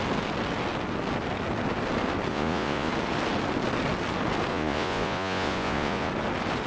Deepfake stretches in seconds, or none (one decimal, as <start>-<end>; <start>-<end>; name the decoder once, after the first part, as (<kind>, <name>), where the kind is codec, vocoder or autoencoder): 2.3-2.9 (vocoder, Vocos); 4.5-6.1